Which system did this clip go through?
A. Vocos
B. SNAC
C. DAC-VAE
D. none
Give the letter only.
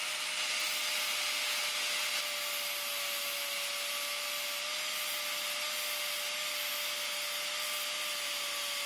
D